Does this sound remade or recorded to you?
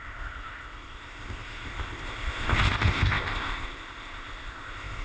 remade